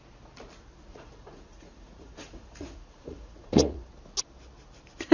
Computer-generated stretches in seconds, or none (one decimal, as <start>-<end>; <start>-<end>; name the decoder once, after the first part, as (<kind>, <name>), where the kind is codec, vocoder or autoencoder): 0.9-3.9 (vocoder, Vocos)